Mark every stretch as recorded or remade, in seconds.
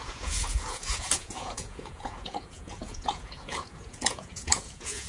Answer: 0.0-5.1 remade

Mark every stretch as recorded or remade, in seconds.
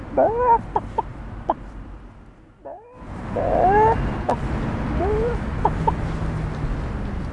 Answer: 0.0-7.3 recorded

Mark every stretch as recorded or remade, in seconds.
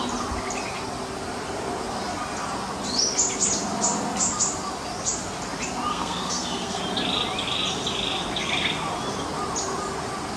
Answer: 0.0-5.9 recorded; 5.9-6.8 remade; 6.8-10.4 recorded